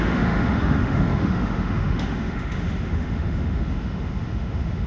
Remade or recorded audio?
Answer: remade